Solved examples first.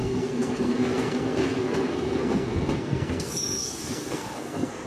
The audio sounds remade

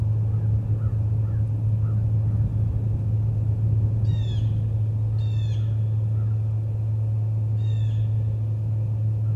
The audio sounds recorded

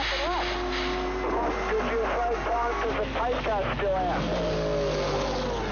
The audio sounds recorded